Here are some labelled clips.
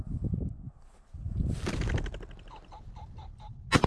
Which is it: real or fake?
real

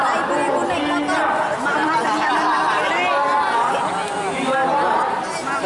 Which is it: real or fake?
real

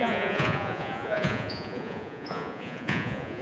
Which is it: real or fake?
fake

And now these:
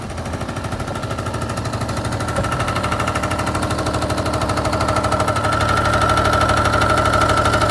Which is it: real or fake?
real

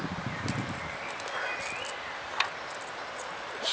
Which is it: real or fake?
real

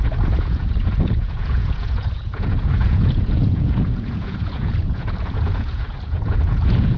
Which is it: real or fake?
fake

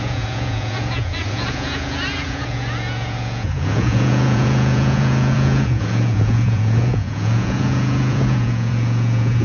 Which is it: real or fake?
fake